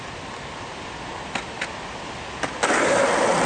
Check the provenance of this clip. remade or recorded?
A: recorded